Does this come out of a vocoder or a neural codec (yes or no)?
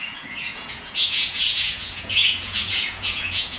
yes